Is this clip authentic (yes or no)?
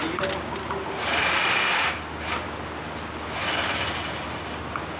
yes